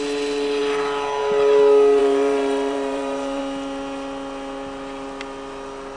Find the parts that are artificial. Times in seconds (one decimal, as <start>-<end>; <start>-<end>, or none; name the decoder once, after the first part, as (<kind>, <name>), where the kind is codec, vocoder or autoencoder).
2.0-3.4 (vocoder, BigVGAN v2)